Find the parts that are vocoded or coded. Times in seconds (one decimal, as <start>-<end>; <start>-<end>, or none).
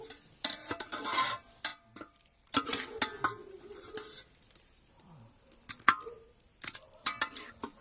none